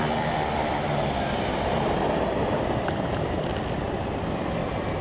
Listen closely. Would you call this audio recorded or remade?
recorded